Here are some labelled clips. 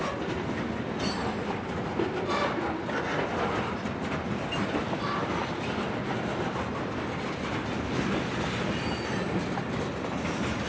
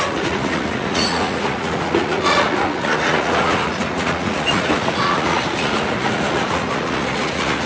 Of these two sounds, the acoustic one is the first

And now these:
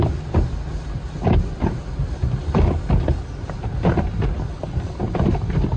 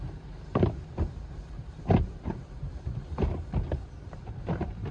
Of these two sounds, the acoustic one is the first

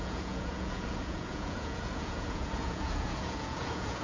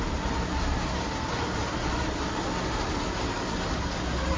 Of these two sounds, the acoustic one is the second